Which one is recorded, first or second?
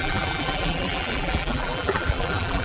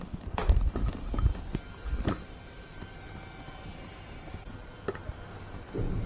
second